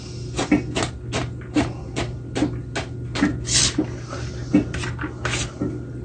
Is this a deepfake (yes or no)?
no